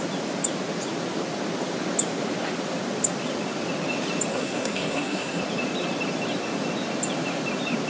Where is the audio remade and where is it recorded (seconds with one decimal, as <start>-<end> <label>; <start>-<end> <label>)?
0.0-4.3 recorded; 4.3-5.4 remade; 5.4-7.9 recorded

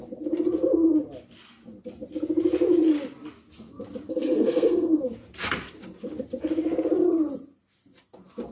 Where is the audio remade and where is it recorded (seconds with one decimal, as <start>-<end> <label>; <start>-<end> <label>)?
0.0-4.1 recorded; 4.1-5.0 remade; 5.0-8.5 recorded